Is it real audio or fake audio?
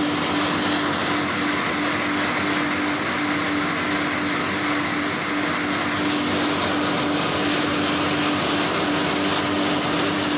real